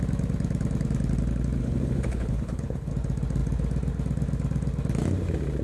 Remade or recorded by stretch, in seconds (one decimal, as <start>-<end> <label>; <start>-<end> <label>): 0.0-1.6 recorded; 1.6-2.9 remade; 2.9-5.6 recorded